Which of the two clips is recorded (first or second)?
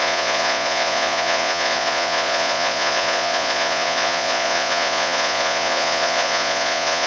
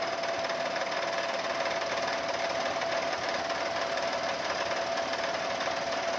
second